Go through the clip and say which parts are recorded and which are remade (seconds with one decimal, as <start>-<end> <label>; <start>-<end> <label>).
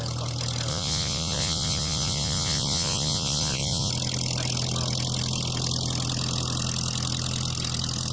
0.0-0.7 recorded; 0.7-3.9 remade; 3.9-8.1 recorded